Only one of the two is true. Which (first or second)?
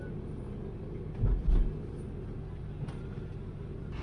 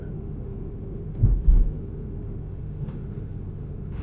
first